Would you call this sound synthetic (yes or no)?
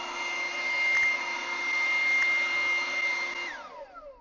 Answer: no